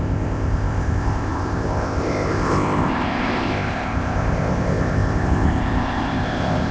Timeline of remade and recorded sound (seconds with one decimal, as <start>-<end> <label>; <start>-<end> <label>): 0.0-6.7 remade